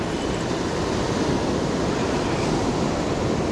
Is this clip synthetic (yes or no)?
no